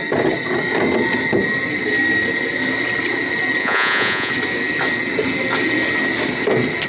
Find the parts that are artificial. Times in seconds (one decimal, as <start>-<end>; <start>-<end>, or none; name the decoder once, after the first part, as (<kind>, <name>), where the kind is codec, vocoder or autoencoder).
3.6-4.3 (vocoder, Vocos)